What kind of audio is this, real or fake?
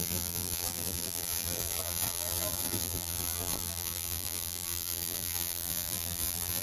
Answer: fake